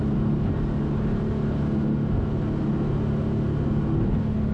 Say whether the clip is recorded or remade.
recorded